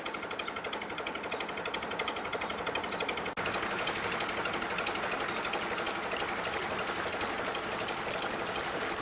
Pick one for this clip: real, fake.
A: real